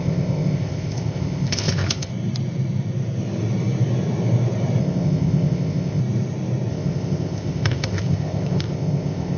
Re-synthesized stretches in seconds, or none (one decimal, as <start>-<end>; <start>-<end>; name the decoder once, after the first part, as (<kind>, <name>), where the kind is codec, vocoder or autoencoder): 0.0-2.1 (codec, ZipCodec); 4.8-6.0; 6.7-9.4